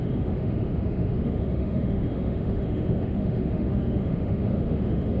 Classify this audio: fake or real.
fake